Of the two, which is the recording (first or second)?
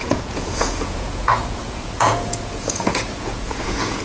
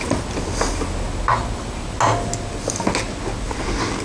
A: second